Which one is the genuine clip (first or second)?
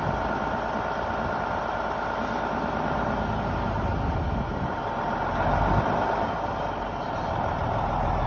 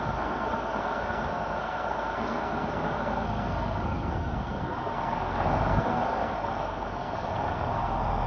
first